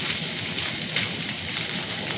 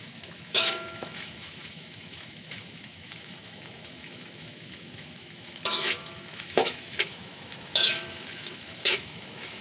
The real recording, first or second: first